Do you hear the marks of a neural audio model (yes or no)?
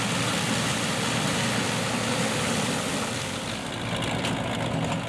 no